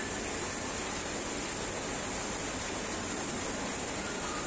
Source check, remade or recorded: recorded